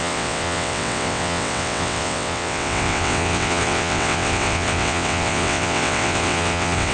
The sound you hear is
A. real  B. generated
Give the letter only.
B